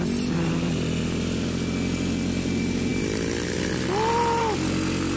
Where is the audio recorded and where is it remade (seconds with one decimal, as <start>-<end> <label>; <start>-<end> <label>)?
0.0-5.2 recorded